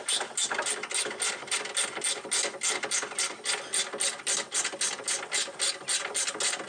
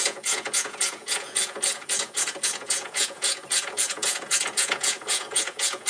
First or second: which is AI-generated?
second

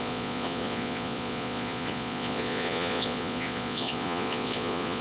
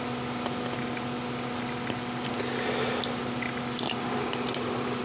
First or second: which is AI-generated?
first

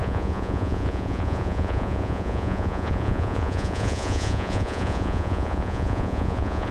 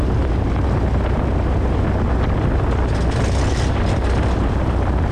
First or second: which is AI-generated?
first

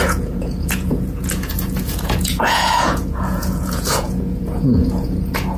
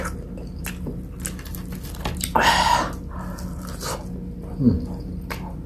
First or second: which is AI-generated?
first